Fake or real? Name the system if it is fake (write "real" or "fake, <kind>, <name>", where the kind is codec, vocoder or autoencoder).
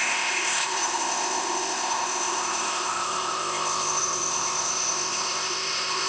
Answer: fake, codec, ZipCodec